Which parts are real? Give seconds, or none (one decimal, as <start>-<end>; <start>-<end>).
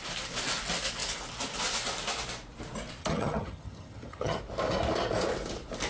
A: 0.0-3.0; 4.4-5.9